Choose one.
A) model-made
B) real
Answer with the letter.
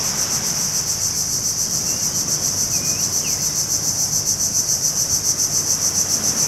B